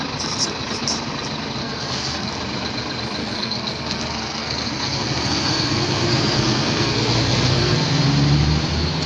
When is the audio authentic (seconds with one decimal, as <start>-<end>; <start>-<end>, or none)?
0.0-1.6; 2.3-3.2; 8.0-9.1